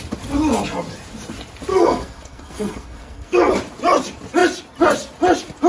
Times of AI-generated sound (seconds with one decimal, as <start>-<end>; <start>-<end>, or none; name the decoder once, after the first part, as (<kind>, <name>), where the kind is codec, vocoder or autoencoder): 1.7-3.5 (codec, SNAC)